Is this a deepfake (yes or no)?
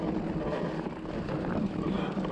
no